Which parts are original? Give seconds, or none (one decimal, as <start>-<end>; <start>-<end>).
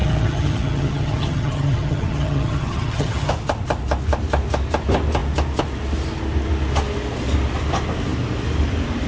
3.3-9.1